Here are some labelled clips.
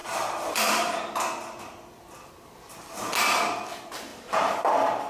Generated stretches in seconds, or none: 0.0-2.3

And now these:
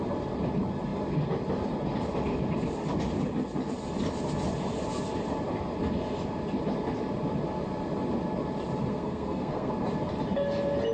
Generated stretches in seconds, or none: 8.9-9.7

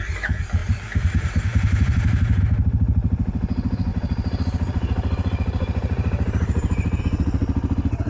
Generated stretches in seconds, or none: 0.6-2.4; 3.9-7.0

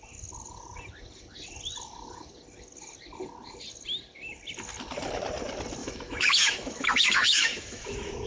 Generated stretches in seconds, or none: 5.8-8.3

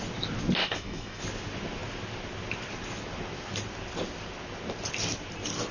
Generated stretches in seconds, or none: 0.6-1.2

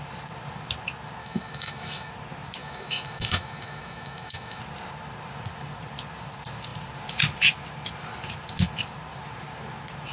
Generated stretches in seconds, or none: 1.2-2.1; 2.6-4.6

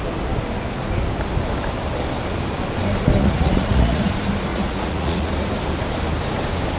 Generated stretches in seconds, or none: 3.2-4.1; 4.5-5.3

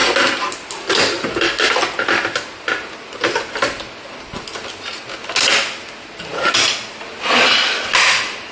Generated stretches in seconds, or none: none